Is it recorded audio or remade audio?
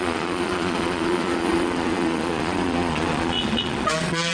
remade